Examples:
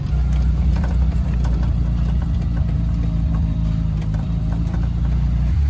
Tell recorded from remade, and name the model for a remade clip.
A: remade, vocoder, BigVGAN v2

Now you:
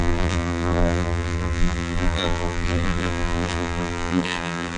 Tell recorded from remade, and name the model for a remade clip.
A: remade, vocoder, BigVGAN v2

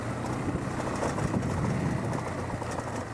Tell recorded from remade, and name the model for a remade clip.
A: recorded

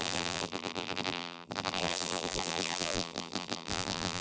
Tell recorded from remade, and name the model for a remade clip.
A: remade, vocoder, BigVGAN v2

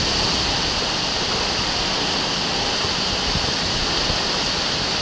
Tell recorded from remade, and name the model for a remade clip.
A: recorded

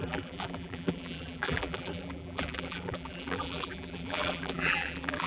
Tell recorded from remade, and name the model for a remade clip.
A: remade, vocoder, BigVGAN v2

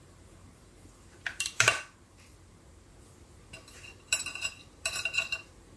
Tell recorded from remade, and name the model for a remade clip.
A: remade, vocoder, BigVGAN v2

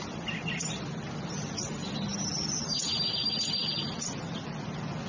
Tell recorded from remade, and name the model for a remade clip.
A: recorded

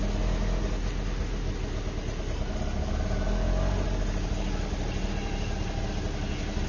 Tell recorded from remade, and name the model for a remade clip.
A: recorded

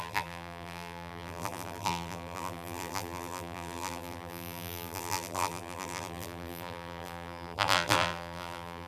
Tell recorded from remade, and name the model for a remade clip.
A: remade, vocoder, BigVGAN v2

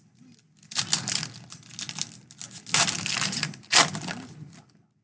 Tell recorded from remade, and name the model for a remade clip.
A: recorded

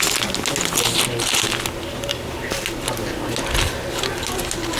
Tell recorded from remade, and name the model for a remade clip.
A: recorded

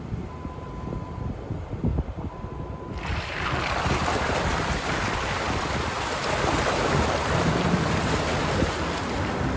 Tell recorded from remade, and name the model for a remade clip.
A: remade, vocoder, BigVGAN v2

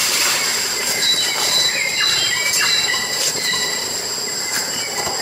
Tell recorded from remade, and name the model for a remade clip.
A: remade, vocoder, BigVGAN v2